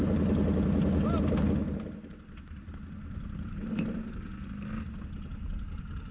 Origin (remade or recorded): recorded